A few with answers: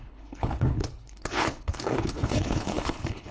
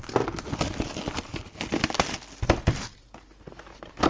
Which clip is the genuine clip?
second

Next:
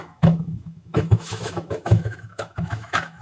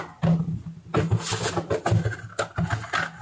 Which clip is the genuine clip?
second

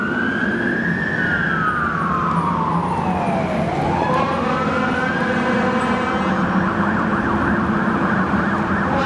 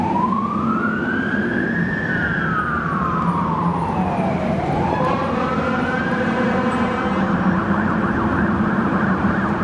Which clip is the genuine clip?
first